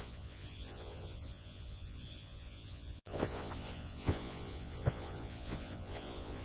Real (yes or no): no